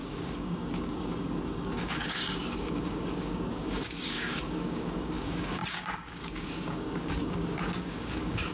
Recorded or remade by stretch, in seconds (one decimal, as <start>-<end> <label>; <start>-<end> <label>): 0.0-8.5 remade